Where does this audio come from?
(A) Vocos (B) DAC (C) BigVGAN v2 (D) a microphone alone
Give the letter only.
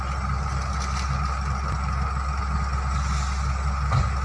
D